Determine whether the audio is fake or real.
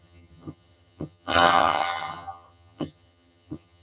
fake